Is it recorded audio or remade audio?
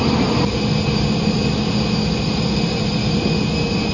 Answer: recorded